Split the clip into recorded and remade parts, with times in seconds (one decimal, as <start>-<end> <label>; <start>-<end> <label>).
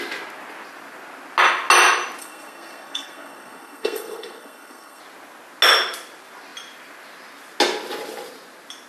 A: 0.0-2.2 recorded; 2.2-5.0 remade; 5.0-8.9 recorded